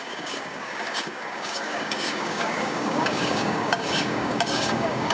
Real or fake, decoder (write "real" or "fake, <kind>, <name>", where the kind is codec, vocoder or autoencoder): fake, codec, DAC